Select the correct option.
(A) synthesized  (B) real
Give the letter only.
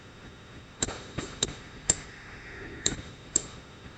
A